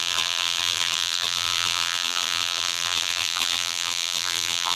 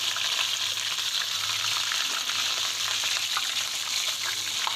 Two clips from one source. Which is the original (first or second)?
second